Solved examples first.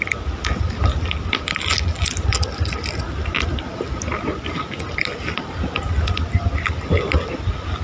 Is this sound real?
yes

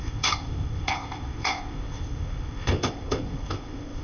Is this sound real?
no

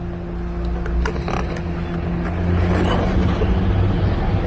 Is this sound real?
yes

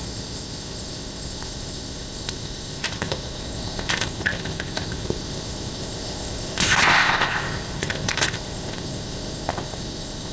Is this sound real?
no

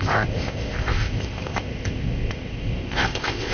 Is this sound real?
no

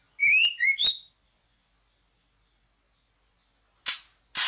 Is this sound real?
yes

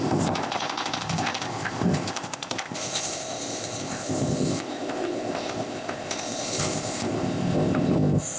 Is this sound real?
no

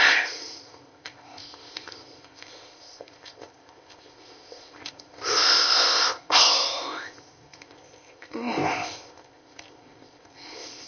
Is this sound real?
no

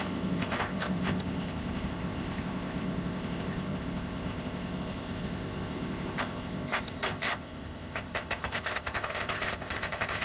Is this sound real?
no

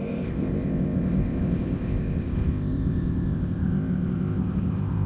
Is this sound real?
no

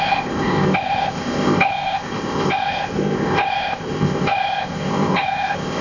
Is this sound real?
no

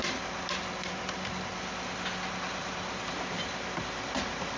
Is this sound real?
yes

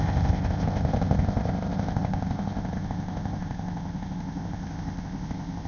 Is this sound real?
no